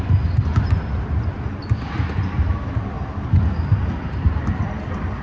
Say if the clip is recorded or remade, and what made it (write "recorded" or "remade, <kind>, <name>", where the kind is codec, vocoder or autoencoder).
recorded